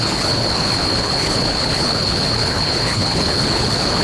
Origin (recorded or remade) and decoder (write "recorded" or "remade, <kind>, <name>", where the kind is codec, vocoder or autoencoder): remade, codec, HILCodec